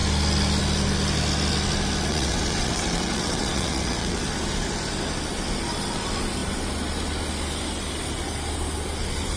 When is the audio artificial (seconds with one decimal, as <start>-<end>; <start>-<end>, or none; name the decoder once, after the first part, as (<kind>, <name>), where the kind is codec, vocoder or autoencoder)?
2.1-4.2 (vocoder, WaveNeXt)

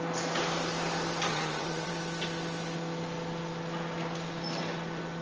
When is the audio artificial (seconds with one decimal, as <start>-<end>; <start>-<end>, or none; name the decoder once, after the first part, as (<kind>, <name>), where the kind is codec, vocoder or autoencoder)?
1.3-1.9 (vocoder, HiFi-GAN)

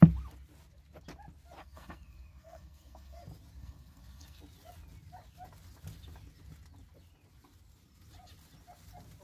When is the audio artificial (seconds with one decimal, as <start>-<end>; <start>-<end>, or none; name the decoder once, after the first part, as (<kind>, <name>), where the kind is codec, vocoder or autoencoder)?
1.6-3.2 (codec, SNAC); 3.6-4.4

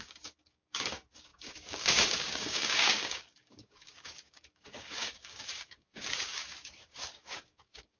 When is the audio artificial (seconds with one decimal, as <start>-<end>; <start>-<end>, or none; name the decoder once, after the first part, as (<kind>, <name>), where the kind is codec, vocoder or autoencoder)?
0.0-8.0 (codec, DAC)

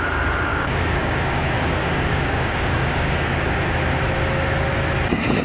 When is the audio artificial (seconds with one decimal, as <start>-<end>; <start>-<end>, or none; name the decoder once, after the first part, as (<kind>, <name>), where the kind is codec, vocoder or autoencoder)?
0.5-3.7 (codec, DAC)

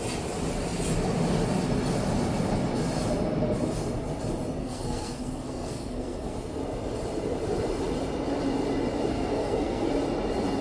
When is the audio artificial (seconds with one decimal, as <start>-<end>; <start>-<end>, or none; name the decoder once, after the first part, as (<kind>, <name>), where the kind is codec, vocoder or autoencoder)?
4.6-6.6 (codec, SNAC); 9.1-9.9

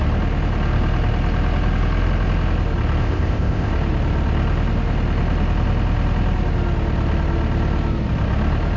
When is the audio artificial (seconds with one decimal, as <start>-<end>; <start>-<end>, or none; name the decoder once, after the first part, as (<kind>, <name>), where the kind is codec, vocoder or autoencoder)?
3.0-3.7 (codec, ZipCodec)